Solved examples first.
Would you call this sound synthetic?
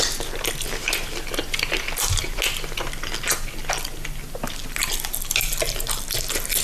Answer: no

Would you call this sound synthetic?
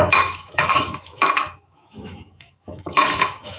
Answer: yes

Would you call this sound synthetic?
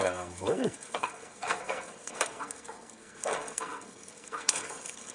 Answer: yes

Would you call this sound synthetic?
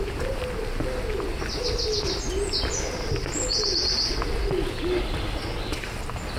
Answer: no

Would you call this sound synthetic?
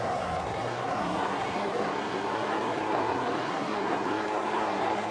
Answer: yes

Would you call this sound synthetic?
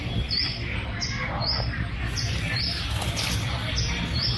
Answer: yes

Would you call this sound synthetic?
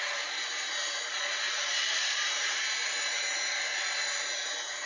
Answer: yes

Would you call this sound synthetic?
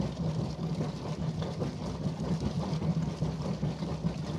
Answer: no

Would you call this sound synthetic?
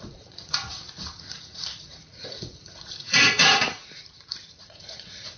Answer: yes